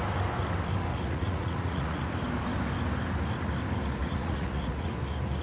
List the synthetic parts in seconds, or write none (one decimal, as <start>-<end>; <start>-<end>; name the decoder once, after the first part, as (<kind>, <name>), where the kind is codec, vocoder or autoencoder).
0.9-2.0 (vocoder, Vocos); 4.0-4.9

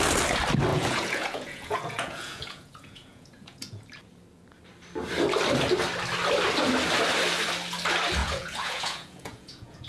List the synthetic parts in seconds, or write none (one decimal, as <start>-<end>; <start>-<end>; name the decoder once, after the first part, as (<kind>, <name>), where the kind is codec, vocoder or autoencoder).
0.7-3.8 (vocoder, Vocos); 8.2-9.9

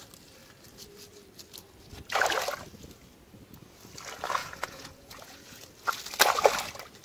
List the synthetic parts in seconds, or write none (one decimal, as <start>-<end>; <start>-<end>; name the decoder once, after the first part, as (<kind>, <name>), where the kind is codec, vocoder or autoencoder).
4.4-5.7 (vocoder, Vocos)

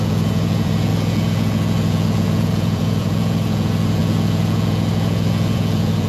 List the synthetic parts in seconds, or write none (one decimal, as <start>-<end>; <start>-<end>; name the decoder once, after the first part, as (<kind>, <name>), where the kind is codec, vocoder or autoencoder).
0.0-6.1 (vocoder, Vocos)

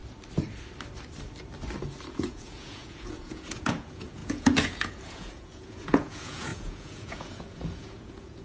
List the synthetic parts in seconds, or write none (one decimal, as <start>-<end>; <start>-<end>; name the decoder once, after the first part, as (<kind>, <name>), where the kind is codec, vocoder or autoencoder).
2.1-8.4 (vocoder, Vocos)

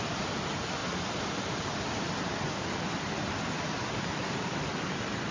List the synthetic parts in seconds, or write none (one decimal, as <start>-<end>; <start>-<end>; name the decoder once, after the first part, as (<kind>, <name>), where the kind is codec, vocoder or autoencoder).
none

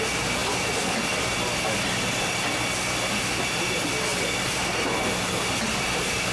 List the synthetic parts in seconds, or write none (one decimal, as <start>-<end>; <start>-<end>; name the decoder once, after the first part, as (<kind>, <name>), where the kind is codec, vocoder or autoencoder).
none